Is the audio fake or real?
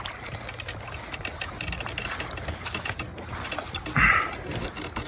real